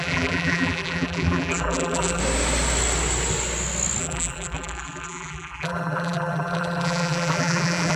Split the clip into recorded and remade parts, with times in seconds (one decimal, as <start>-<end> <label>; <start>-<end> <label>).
0.0-2.2 remade; 2.2-4.0 recorded; 4.0-8.0 remade